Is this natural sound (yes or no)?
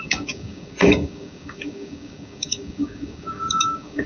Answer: no